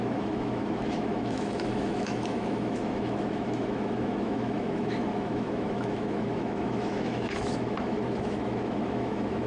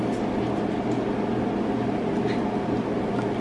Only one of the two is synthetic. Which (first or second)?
first